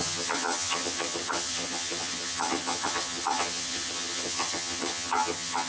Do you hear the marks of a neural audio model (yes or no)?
yes